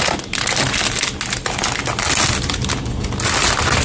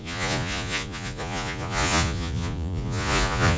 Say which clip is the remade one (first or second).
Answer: second